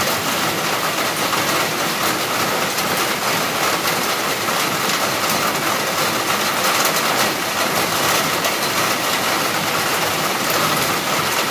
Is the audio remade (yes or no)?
no